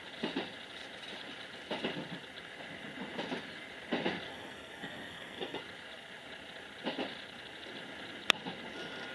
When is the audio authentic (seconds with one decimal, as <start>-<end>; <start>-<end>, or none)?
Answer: 0.0-4.3; 5.6-9.1